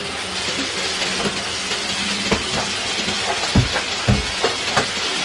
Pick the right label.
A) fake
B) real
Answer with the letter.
B